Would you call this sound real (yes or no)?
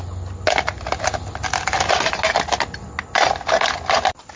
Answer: yes